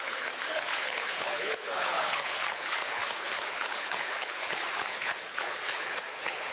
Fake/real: fake